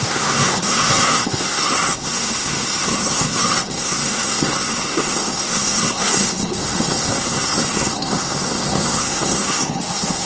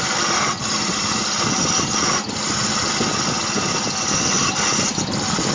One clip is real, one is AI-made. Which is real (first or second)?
second